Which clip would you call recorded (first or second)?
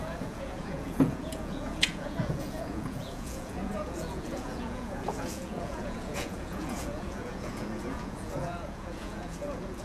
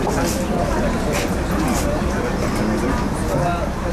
second